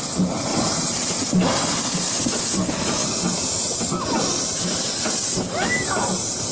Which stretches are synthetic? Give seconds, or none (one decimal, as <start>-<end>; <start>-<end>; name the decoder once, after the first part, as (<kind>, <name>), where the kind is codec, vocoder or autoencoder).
0.5-1.3 (vocoder, BigVGAN v2)